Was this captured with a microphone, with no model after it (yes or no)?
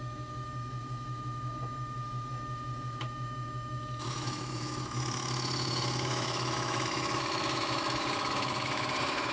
no